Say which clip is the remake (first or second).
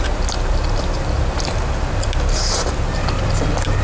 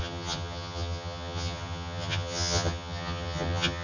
second